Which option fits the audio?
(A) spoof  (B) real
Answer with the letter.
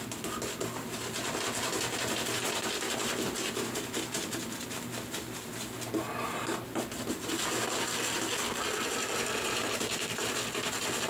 B